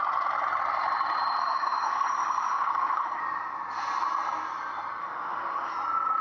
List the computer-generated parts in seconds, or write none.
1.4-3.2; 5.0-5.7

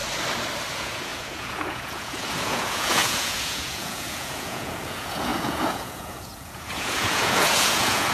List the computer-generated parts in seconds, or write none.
0.7-8.1

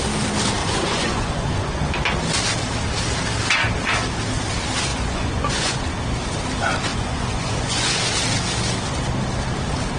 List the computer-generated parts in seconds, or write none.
0.6-1.8; 4.9-5.8; 6.9-8.0

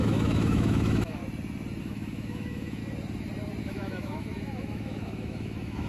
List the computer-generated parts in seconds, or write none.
0.0-1.2; 1.8-2.8; 3.6-5.9